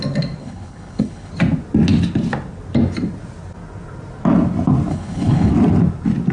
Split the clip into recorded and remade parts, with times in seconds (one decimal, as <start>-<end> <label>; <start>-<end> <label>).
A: 0.0-0.4 recorded; 0.4-1.3 remade; 1.3-4.9 recorded; 4.9-5.5 remade; 5.5-6.3 recorded